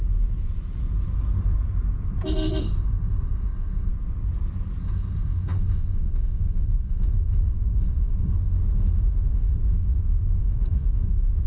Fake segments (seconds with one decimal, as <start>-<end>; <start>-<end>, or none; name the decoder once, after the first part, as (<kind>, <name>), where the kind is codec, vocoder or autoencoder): 2.6-3.9 (autoencoder, DAC-VAE); 4.8-11.5